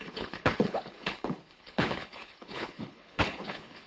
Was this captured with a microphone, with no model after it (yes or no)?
no